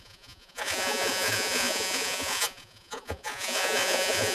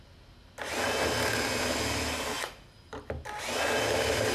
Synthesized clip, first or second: first